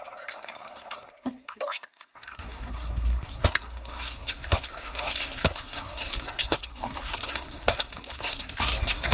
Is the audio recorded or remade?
remade